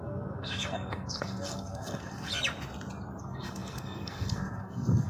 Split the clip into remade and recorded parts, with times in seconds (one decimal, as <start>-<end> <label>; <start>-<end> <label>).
0.0-2.3 remade; 2.3-3.2 recorded; 3.2-5.1 remade